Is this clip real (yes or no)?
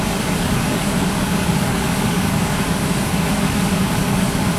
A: no